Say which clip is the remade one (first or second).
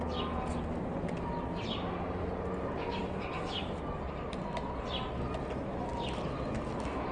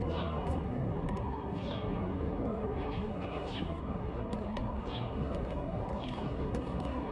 second